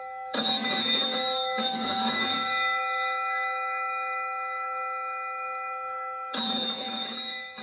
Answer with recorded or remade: remade